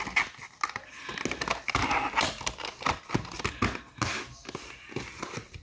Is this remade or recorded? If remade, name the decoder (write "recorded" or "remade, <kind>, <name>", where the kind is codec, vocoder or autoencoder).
recorded